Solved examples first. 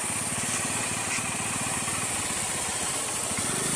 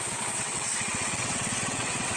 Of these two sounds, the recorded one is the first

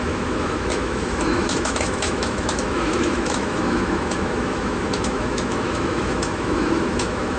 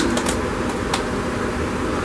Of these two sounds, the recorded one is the second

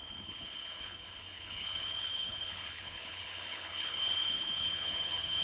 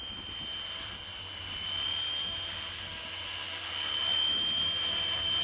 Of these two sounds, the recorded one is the second